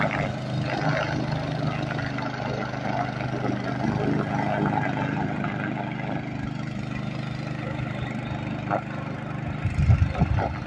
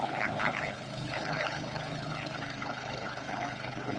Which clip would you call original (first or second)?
first